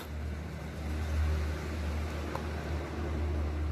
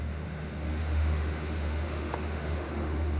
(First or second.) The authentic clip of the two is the first